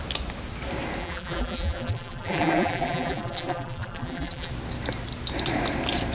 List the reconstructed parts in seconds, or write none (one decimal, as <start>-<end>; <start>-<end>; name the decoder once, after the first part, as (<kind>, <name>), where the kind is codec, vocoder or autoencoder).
1.0-4.5 (vocoder, BigVGAN v2)